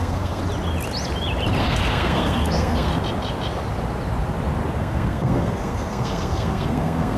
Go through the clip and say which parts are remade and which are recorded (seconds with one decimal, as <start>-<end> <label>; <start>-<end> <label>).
0.0-0.4 remade; 0.4-1.6 recorded; 1.6-2.9 remade; 2.9-4.8 recorded; 4.8-7.2 remade

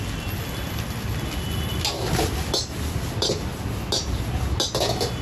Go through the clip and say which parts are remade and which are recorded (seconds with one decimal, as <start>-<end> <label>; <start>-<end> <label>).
0.0-5.2 recorded

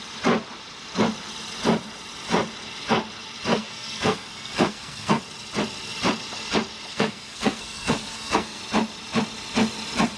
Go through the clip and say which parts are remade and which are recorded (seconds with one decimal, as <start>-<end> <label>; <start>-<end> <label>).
0.0-3.5 recorded; 3.5-5.2 remade; 5.2-6.9 recorded; 6.9-8.6 remade; 8.6-10.2 recorded

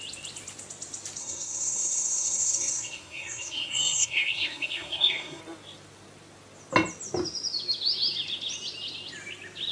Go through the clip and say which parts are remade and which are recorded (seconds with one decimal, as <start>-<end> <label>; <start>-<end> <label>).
0.0-1.2 recorded; 1.2-5.4 remade; 5.4-9.7 recorded

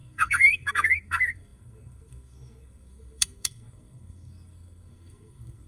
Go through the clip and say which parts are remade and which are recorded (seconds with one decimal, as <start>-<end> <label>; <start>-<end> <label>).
0.0-5.7 remade

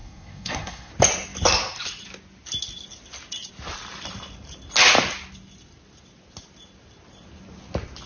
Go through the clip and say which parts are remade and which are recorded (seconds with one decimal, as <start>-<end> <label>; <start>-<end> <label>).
0.0-0.9 remade; 0.9-8.1 recorded

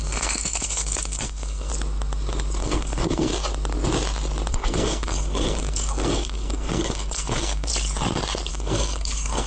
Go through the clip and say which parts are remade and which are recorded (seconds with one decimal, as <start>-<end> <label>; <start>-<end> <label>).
0.0-1.7 remade; 1.7-2.6 recorded; 2.6-3.3 remade; 3.3-4.5 recorded; 4.5-7.7 remade; 7.7-8.5 recorded; 8.5-9.5 remade

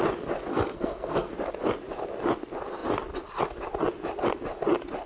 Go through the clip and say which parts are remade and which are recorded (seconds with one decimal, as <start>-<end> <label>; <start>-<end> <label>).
0.0-0.5 recorded; 0.5-1.3 remade; 1.3-5.1 recorded